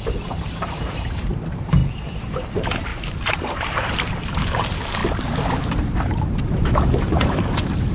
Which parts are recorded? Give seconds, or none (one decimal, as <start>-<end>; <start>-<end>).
5.0-5.6